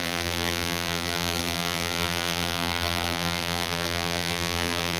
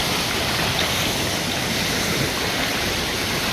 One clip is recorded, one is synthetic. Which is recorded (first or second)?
second